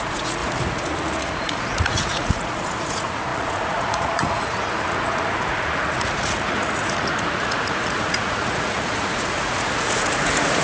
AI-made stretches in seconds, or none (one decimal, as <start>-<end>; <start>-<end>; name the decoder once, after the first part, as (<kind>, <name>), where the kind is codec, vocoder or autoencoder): 0.0-10.6 (vocoder, Vocos)